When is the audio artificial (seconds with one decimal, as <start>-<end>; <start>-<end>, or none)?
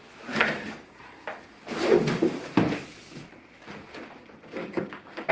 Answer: 4.6-5.3